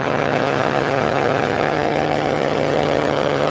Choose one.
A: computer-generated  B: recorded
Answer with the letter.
A